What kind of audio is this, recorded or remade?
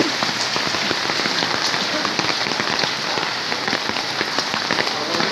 recorded